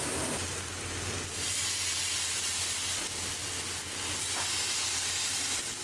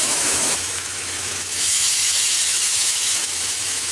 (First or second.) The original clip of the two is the first